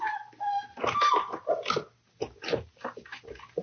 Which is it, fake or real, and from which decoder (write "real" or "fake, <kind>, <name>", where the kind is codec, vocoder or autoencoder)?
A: real